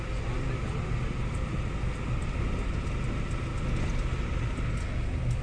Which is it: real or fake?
real